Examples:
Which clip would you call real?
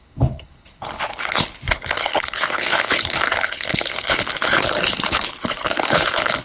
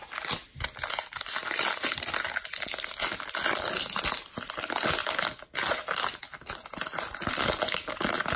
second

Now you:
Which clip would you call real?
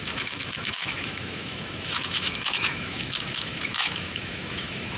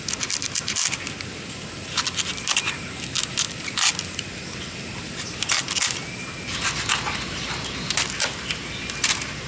second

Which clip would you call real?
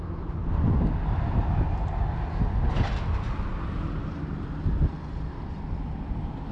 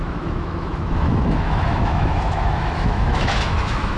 first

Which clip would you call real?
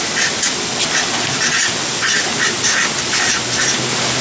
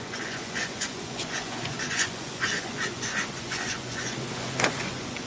first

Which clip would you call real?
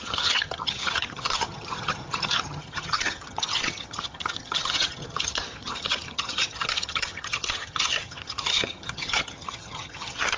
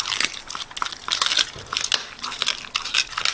second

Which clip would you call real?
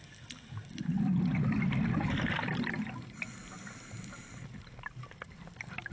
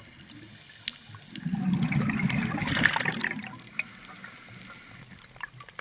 second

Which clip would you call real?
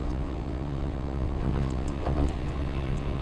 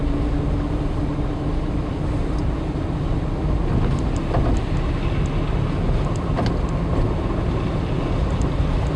second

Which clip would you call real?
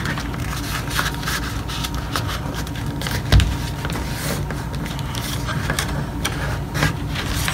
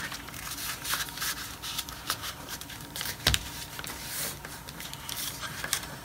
first